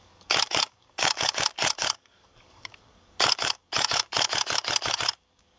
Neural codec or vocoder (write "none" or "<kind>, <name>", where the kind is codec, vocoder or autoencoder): codec, DAC